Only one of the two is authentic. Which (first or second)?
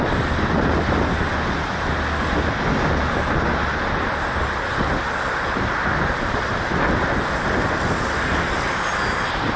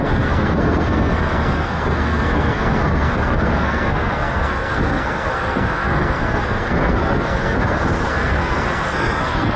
first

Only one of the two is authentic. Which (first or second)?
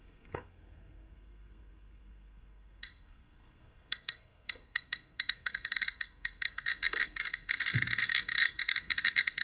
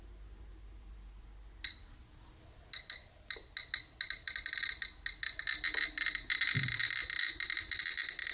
second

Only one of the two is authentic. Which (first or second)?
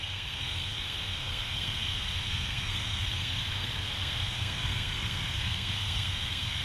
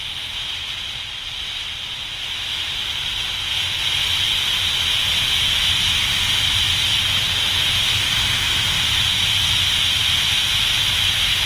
second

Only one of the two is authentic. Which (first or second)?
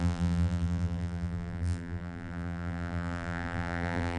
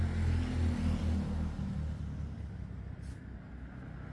second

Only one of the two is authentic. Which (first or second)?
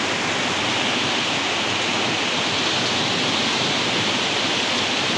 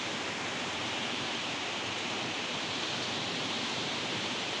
first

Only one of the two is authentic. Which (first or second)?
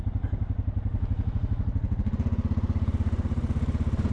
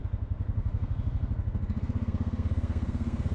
first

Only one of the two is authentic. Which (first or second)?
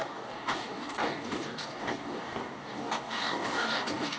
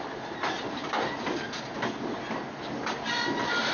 second